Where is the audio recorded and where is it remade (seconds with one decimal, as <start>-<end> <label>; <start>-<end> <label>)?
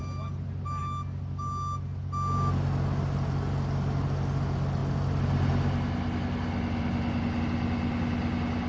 0.0-8.7 recorded